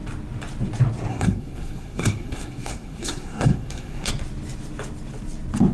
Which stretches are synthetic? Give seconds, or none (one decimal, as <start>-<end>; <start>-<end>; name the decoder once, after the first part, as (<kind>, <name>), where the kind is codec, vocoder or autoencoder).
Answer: 1.1-4.1 (codec, SNAC)